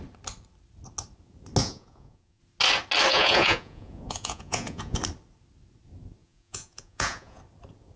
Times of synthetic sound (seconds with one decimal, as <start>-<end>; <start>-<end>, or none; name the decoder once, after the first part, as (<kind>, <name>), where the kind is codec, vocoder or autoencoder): 1.6-2.4 (vocoder, Vocos); 3.1-5.0; 6.2-7.4